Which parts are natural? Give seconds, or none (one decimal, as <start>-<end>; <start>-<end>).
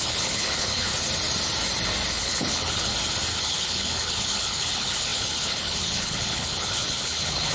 0.9-2.1; 2.9-3.4